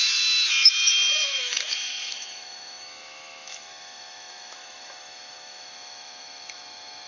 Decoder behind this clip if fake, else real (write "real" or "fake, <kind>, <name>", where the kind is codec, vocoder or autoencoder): fake, autoencoder, DAC-VAE